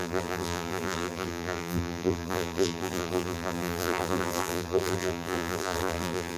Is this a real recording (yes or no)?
no